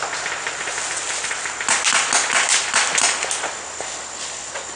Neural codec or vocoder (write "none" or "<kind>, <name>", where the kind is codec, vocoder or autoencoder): none